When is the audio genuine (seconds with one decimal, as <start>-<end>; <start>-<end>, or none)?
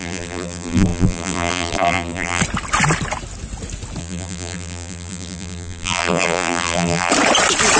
2.4-4.0; 7.1-7.8